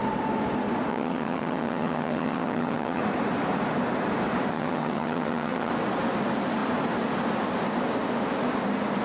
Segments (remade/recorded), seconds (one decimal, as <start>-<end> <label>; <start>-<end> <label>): 0.0-0.9 recorded; 0.9-3.0 remade; 3.0-4.5 recorded; 4.5-5.7 remade; 5.7-9.0 recorded